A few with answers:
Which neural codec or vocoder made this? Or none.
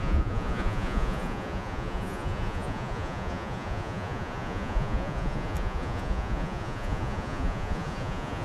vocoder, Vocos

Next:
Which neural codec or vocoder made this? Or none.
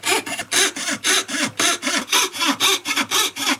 none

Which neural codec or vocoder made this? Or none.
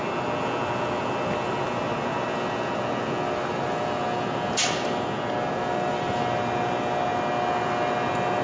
none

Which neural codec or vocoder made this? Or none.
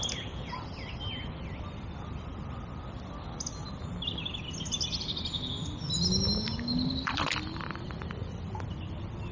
none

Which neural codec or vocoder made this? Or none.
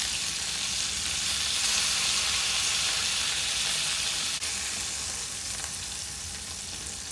none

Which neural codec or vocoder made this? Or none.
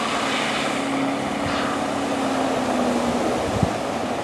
none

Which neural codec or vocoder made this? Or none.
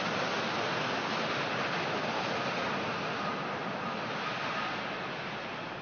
none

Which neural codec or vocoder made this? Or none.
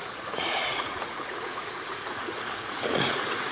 vocoder, Vocos